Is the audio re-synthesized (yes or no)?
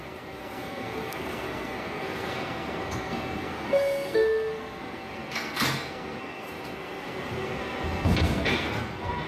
yes